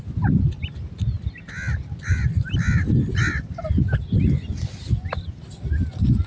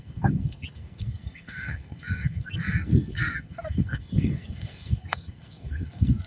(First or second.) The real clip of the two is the first